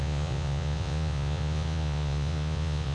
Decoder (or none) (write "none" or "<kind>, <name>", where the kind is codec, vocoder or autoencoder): vocoder, Vocos